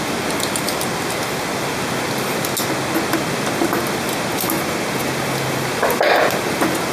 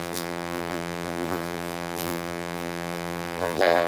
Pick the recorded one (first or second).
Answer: first